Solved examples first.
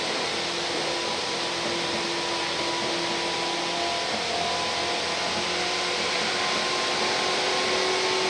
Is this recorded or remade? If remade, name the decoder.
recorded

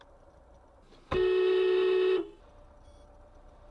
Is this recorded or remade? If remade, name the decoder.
recorded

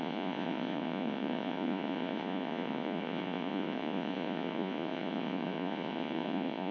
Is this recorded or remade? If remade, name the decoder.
remade, vocoder, Vocos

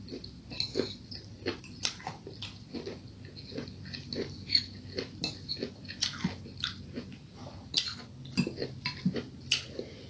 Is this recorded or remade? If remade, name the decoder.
recorded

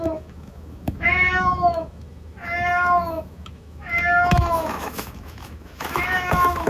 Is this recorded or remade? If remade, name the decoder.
remade, autoencoder, DAC-VAE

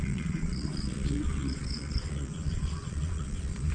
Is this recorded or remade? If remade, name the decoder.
remade, vocoder, Vocos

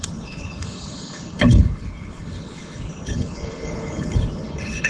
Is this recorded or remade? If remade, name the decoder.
remade, codec, HILCodec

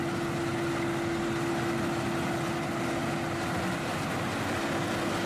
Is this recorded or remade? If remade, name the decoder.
recorded